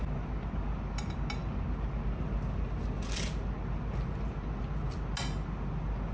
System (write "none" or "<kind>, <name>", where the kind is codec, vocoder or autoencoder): none